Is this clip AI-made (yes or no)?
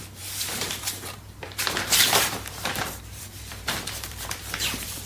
yes